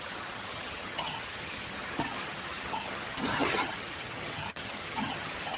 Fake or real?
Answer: fake